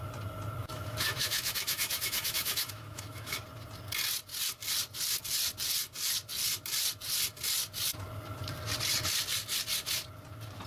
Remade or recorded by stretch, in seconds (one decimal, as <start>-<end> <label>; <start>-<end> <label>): 0.0-0.6 recorded; 0.6-3.4 remade; 3.4-10.7 recorded